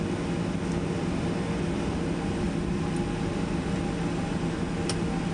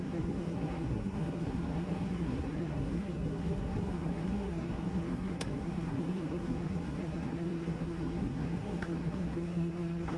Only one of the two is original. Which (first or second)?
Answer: first